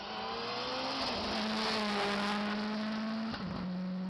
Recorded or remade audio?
recorded